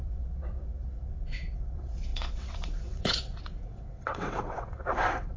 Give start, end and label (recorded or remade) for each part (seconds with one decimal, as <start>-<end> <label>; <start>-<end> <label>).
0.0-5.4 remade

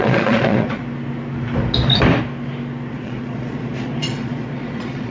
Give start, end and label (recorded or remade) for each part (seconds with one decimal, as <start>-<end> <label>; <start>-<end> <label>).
0.0-0.8 remade; 0.8-2.9 recorded; 2.9-5.1 remade

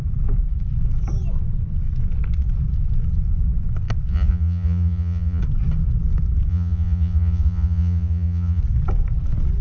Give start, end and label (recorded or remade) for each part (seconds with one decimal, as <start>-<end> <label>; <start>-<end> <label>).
0.0-4.1 recorded; 4.1-5.4 remade; 5.4-6.5 recorded; 6.5-8.6 remade; 8.6-9.6 recorded

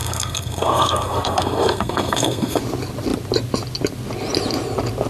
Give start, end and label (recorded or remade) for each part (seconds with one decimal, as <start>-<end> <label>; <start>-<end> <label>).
0.0-2.6 remade; 2.6-5.1 recorded